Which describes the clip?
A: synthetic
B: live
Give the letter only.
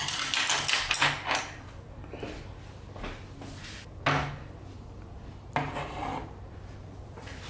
B